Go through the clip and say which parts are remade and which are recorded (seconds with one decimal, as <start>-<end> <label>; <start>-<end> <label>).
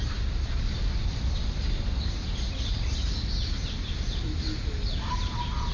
0.0-5.7 recorded